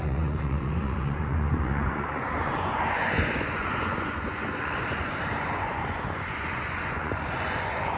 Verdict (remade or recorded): remade